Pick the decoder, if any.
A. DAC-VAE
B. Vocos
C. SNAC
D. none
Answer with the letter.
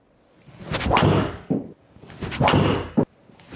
D